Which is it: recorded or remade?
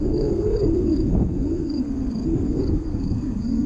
remade